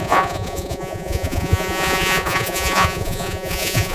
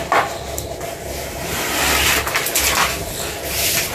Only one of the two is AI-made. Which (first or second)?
first